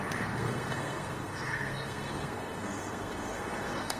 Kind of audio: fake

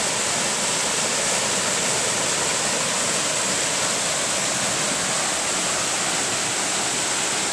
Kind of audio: real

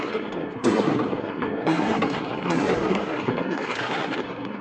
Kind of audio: fake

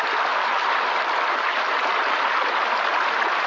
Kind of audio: real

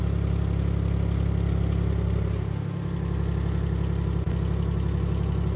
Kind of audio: real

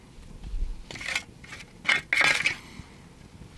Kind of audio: real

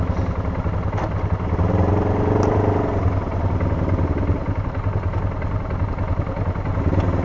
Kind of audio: real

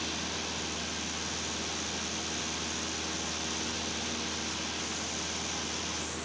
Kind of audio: real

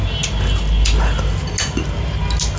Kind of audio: real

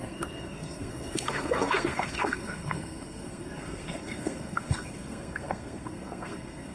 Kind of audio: fake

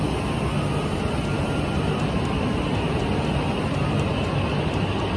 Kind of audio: real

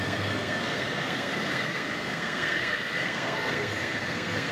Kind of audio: fake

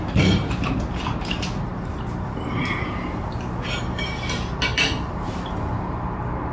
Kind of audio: real